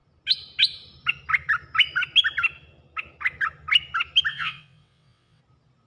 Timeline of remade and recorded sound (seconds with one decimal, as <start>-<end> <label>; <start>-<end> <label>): 0.0-4.3 recorded; 4.3-5.4 remade; 5.4-5.9 recorded